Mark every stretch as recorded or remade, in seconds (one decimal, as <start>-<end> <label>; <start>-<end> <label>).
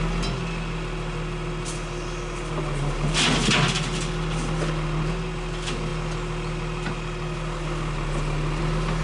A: 0.0-9.0 recorded